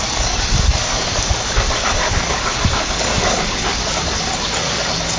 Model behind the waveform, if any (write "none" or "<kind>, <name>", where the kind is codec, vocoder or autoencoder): codec, DAC